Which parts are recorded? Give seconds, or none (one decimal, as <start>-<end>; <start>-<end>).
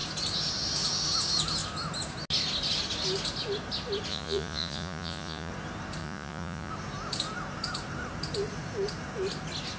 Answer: 0.0-4.1; 5.5-6.0; 6.7-9.8